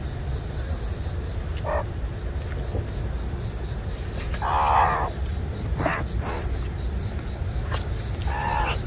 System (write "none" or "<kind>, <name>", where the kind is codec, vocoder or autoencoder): none